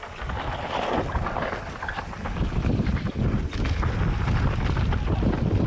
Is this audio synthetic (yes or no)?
no